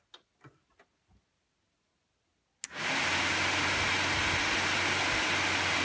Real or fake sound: real